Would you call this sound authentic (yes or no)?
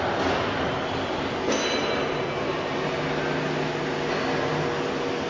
yes